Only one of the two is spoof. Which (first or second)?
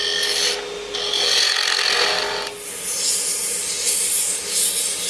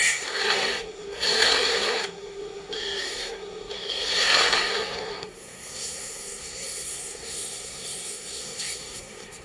second